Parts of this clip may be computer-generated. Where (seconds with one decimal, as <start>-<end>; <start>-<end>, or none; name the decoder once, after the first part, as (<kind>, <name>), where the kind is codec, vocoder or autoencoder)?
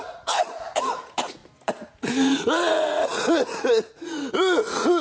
0.0-1.4 (vocoder, Vocos); 1.9-5.0